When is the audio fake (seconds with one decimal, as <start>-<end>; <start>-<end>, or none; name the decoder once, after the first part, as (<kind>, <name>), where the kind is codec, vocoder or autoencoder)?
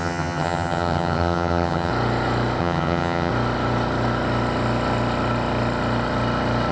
0.0-1.9 (vocoder, HiFi-GAN); 2.6-3.3